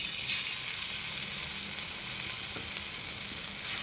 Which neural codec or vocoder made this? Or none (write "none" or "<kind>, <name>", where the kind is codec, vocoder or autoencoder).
none